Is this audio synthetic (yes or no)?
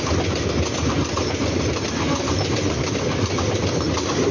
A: no